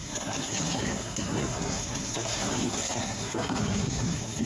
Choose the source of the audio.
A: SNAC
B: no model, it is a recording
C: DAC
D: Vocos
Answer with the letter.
A